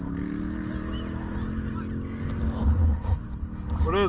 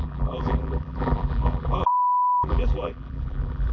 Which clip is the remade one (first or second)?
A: second